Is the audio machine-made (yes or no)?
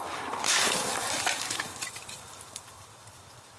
yes